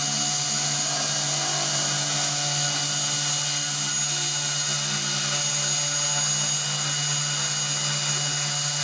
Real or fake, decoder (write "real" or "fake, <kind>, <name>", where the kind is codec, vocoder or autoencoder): real